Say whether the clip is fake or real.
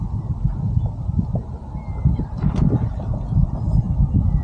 real